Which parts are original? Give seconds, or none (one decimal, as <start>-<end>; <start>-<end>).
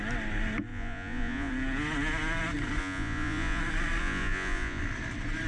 0.0-0.7; 1.5-2.8; 3.6-4.0; 4.8-5.5